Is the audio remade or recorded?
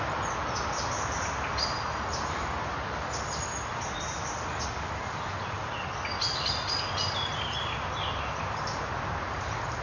recorded